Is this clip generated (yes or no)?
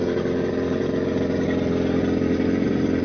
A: no